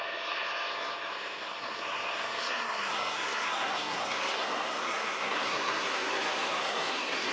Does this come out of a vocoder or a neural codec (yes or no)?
yes